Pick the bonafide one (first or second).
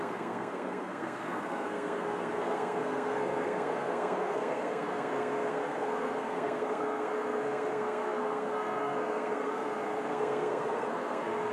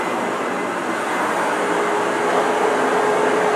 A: second